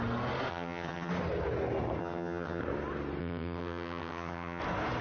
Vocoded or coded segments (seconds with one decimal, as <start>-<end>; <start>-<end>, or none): 0.5-1.1; 2.0-2.6; 3.2-4.6